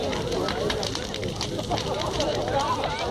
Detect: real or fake real